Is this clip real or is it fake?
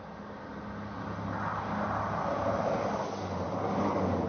real